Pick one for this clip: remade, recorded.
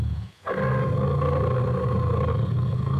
recorded